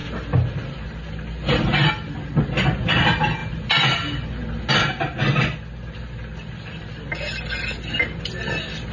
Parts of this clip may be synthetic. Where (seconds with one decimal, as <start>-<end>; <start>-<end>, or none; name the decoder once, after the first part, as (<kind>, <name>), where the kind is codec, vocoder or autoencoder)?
none